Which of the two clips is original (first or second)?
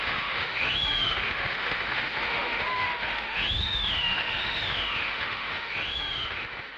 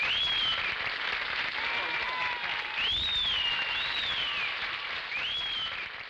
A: second